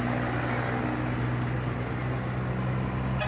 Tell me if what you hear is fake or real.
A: real